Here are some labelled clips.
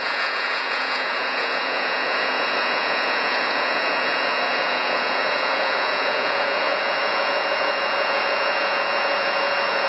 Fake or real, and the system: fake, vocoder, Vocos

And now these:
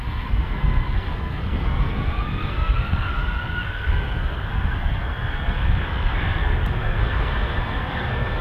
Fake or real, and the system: fake, codec, SNAC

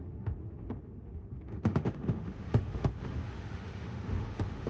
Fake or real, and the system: fake, autoencoder, DAC-VAE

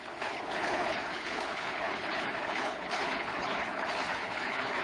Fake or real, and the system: fake, codec, HILCodec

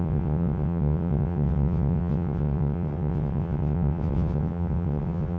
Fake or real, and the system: fake, vocoder, WaveNeXt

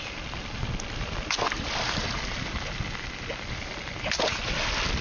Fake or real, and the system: real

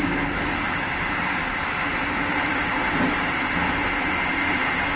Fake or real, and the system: real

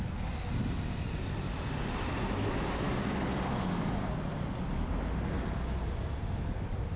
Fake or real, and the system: real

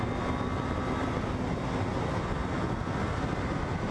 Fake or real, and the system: real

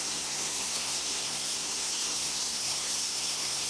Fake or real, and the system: fake, codec, SNAC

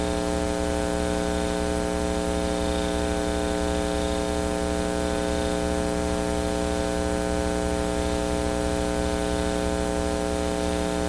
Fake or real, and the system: real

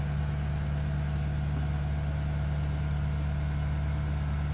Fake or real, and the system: real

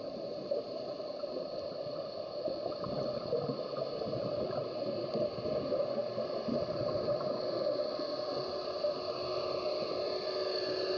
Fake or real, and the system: real